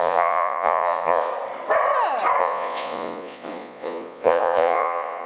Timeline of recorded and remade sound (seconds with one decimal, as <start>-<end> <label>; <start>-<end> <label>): 0.0-1.3 remade; 1.3-2.4 recorded; 2.4-5.3 remade

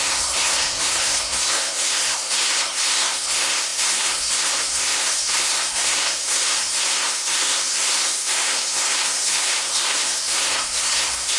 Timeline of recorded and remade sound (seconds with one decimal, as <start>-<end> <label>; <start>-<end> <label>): 0.0-11.4 remade

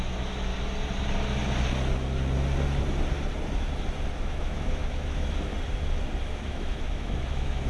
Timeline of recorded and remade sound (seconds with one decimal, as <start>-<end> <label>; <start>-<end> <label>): 0.0-0.5 remade; 0.5-4.2 recorded; 4.2-5.5 remade; 5.5-6.2 recorded; 6.2-7.7 remade

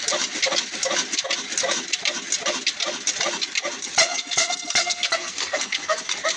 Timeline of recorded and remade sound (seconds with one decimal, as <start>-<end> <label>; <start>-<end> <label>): 0.0-4.1 recorded; 4.1-6.0 remade; 6.0-6.4 recorded

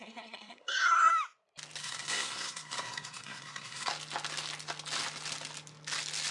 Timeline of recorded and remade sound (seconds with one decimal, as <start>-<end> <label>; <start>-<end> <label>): 0.0-1.1 remade; 1.1-1.8 recorded; 1.8-3.9 remade; 3.9-6.3 recorded

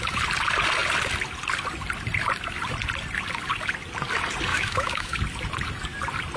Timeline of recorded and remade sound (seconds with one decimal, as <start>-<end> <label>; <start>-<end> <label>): 0.0-4.5 recorded; 4.5-5.2 remade; 5.2-6.4 recorded

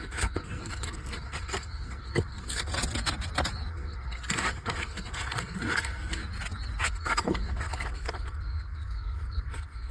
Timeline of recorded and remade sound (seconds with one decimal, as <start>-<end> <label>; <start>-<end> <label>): 0.0-2.7 remade; 2.7-3.7 recorded; 3.7-6.2 remade; 6.2-6.9 recorded; 6.9-9.9 remade

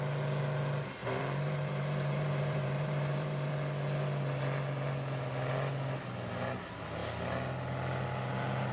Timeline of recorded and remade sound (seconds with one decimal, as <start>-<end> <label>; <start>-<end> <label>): 0.0-1.0 recorded; 1.0-3.5 remade; 3.5-8.7 recorded